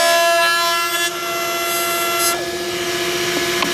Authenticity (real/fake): real